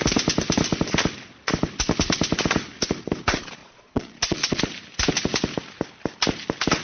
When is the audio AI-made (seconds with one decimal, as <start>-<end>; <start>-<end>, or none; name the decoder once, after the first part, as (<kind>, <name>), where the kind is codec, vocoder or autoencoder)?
3.6-4.6 (vocoder, Vocos)

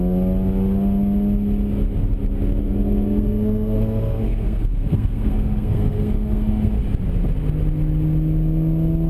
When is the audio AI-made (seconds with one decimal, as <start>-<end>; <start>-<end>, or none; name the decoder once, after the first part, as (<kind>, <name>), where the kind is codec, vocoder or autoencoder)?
2.6-6.7 (codec, SNAC)